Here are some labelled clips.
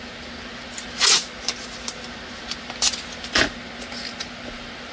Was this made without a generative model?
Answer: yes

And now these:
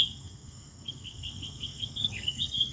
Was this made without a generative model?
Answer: no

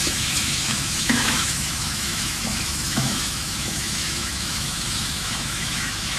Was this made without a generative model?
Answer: no